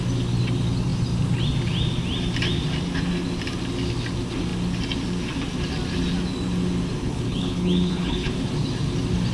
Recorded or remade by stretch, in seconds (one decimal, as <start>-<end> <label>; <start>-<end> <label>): 0.0-7.0 recorded; 7.0-8.3 remade; 8.3-9.3 recorded